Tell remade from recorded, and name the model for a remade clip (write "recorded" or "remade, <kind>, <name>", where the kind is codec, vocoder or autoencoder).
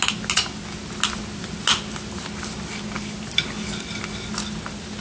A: recorded